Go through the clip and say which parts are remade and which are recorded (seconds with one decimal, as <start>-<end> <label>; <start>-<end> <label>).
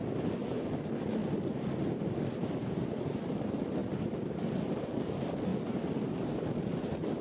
0.0-1.2 remade; 1.2-2.1 recorded; 2.1-5.5 remade; 5.5-6.3 recorded; 6.3-7.2 remade